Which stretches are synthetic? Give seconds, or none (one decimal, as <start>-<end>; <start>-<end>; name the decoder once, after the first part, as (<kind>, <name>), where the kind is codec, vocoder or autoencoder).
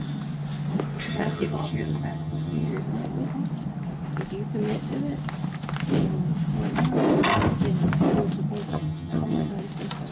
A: 1.1-2.7 (vocoder, HiFi-GAN); 8.7-9.5